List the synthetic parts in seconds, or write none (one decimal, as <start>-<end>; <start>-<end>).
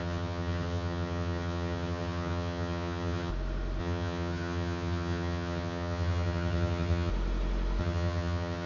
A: 0.0-3.3; 3.8-7.1; 7.8-8.7